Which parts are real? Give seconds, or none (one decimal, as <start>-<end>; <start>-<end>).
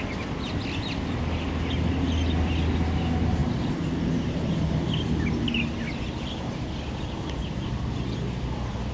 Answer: 0.0-8.9